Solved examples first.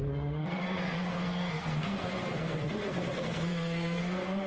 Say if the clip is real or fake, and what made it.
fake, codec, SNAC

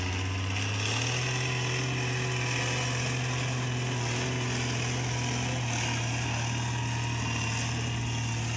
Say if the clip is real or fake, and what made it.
real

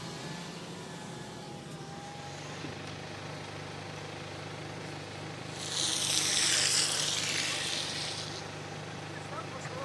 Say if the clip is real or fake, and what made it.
real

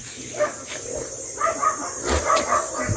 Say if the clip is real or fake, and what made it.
real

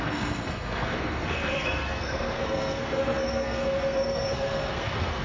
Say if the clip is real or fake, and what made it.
fake, codec, SNAC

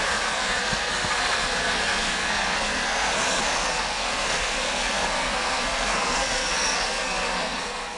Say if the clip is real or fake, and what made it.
fake, codec, SNAC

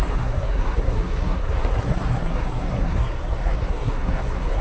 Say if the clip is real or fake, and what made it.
fake, codec, SNAC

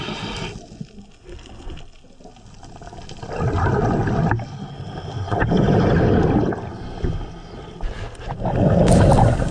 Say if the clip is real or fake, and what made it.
real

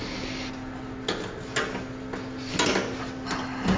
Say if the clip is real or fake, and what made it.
real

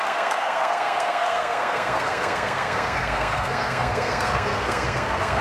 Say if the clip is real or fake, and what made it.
fake, codec, SNAC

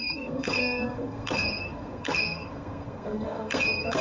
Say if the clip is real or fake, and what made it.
fake, codec, SNAC